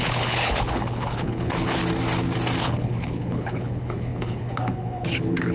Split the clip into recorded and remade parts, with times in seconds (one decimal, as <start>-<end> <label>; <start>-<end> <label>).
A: 0.0-1.8 remade; 1.8-2.6 recorded; 2.6-5.5 remade